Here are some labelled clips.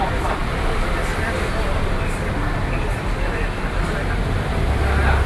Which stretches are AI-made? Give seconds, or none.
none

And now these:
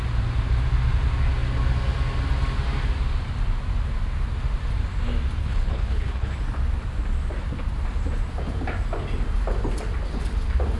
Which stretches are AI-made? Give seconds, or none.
5.4-6.3 (codec, HILCodec)

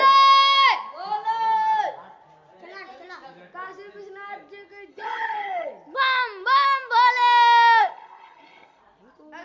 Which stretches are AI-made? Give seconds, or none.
4.9-5.7 (codec, HILCodec); 7.8-8.8